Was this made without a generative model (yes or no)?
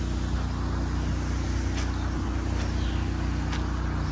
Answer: yes